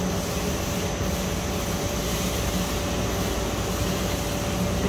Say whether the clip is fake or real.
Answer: real